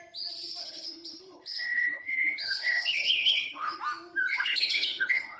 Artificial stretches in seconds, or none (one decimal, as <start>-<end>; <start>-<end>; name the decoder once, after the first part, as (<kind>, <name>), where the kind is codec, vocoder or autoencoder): 0.6-3.8 (codec, HILCodec); 4.3-5.4